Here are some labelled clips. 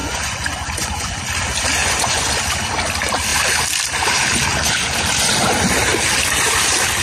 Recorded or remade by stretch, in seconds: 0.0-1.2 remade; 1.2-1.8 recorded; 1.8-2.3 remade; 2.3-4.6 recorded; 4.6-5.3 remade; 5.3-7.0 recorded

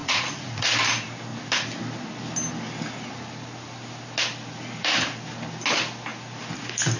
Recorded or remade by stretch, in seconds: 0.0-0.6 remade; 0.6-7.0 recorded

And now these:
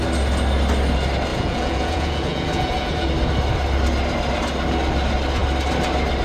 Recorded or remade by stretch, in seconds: 0.0-1.3 recorded; 1.3-3.1 remade; 3.1-6.2 recorded

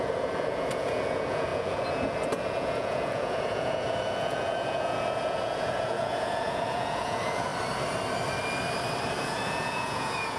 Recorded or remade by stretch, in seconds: 0.0-7.5 remade; 7.5-9.2 recorded; 9.2-10.4 remade

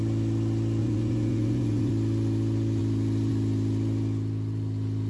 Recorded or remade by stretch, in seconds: 0.0-0.8 recorded; 0.8-1.9 remade; 1.9-5.1 recorded